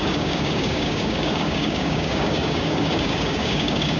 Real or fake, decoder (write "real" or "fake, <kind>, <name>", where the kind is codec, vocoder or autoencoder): fake, codec, DAC